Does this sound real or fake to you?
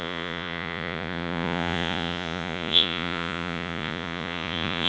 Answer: fake